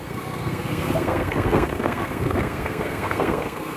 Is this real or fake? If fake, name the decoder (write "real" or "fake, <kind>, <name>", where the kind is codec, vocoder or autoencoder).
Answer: fake, codec, SNAC